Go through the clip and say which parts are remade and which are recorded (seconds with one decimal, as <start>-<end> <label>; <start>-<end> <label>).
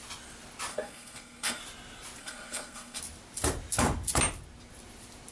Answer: 0.0-0.7 recorded; 0.7-1.6 remade; 1.6-2.2 recorded; 2.2-3.0 remade; 3.0-5.3 recorded